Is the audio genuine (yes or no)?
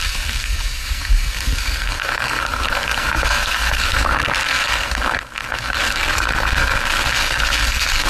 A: no